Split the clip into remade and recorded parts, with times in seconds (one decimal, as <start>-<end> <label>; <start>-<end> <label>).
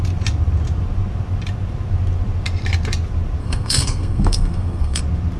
0.0-3.4 recorded; 3.4-5.0 remade; 5.0-5.4 recorded